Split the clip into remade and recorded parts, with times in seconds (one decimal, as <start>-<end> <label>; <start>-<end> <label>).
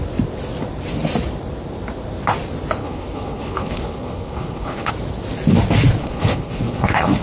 0.0-2.8 recorded; 2.8-4.9 remade; 4.9-6.0 recorded; 6.0-7.2 remade